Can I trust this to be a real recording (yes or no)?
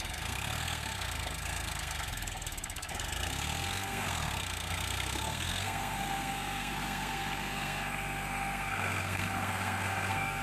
no